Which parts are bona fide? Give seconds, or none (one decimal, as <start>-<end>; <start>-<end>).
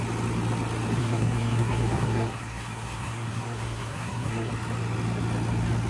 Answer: 0.0-1.0; 4.5-5.9